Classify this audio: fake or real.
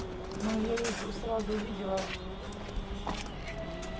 real